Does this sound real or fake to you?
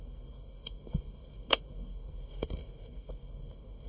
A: fake